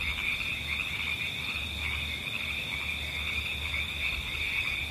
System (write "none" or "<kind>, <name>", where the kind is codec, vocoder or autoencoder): none